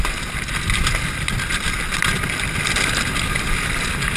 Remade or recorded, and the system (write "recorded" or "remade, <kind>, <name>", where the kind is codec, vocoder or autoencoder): recorded